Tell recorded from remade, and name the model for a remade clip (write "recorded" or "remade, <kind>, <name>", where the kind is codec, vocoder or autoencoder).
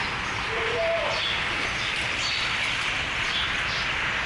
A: recorded